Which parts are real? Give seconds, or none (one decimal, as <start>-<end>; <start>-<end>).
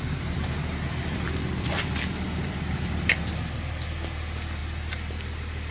3.4-4.6